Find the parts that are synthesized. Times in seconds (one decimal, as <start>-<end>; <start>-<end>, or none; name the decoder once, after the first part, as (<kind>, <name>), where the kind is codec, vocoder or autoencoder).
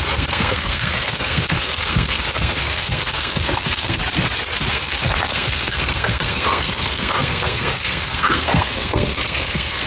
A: 0.0-4.0 (codec, SNAC); 4.7-9.9